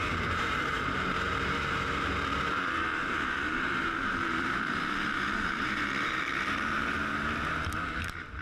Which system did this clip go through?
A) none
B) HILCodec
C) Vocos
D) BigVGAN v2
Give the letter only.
D